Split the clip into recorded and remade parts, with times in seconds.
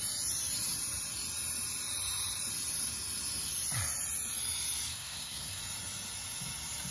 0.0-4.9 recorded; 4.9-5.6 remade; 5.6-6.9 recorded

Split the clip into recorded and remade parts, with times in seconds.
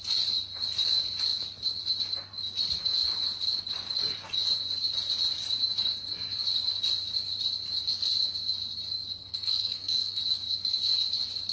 0.0-9.2 recorded; 9.2-10.2 remade; 10.2-11.5 recorded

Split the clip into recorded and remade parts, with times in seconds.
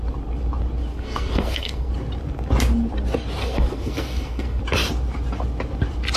0.0-0.9 recorded; 0.9-1.9 remade; 1.9-3.4 recorded; 3.4-4.6 remade; 4.6-6.2 recorded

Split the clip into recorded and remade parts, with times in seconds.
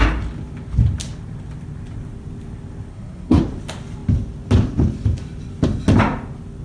0.0-2.9 recorded; 2.9-3.4 remade; 3.4-6.6 recorded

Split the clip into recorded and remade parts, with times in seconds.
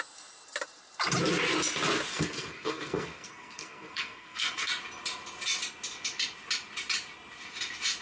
0.0-2.1 recorded; 2.1-4.7 remade; 4.7-8.0 recorded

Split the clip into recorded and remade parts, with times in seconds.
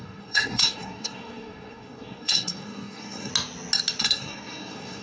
0.0-3.3 remade; 3.3-4.0 recorded; 4.0-5.0 remade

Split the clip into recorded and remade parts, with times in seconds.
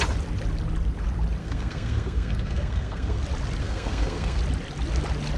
0.0-1.4 recorded; 1.4-3.2 remade; 3.2-3.6 recorded; 3.6-4.4 remade; 4.4-5.4 recorded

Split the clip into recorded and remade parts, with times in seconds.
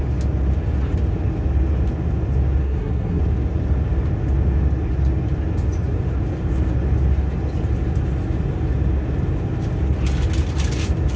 0.0-2.6 recorded; 2.6-3.2 remade; 3.2-11.2 recorded